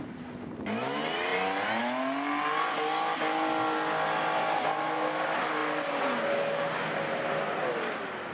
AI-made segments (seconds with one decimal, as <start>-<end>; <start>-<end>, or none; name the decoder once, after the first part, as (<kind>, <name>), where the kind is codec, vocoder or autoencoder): none